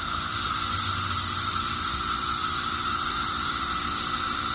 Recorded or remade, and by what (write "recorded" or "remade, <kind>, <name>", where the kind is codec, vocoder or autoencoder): remade, vocoder, BigVGAN v2